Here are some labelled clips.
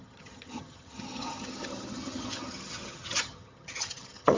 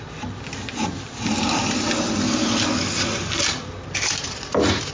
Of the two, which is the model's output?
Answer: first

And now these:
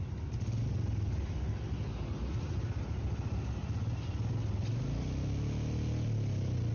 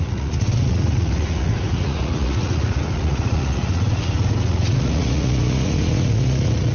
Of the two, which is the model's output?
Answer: second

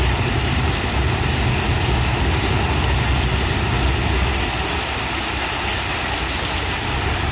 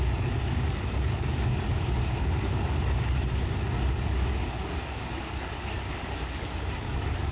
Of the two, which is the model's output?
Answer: second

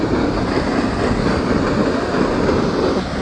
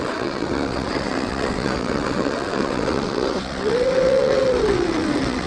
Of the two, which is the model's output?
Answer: second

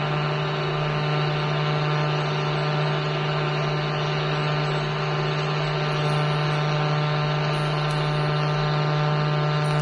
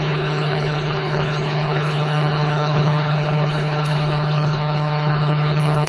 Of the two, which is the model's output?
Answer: second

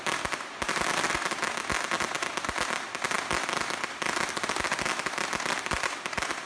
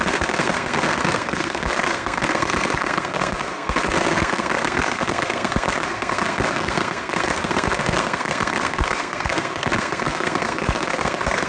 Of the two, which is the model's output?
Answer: second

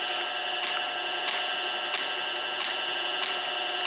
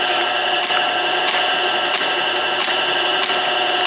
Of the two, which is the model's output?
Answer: second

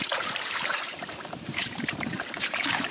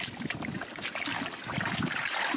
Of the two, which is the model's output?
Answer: first